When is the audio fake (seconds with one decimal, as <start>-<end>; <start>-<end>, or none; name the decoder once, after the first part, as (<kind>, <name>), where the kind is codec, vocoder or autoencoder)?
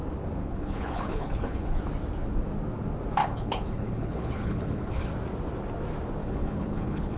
0.4-1.8 (codec, HILCodec); 3.2-5.1; 6.2-7.2